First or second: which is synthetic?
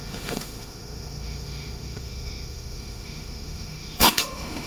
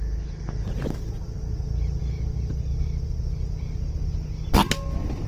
first